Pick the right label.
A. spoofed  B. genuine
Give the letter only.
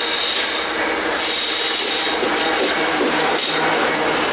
B